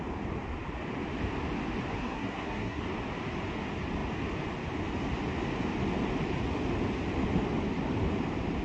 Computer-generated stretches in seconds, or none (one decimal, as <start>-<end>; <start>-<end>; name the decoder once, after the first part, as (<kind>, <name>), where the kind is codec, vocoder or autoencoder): 2.0-2.8 (codec, SNAC)